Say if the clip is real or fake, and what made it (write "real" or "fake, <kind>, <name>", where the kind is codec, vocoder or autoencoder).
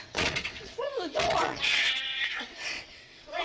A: fake, vocoder, WaveNeXt